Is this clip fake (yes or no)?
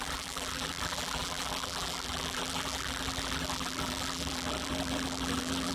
yes